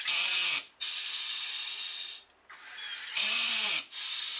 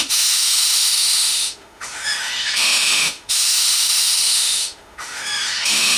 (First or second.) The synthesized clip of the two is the second